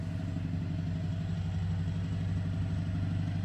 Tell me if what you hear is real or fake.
real